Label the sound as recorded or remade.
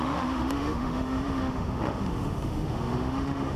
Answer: remade